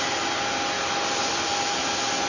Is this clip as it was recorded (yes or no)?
yes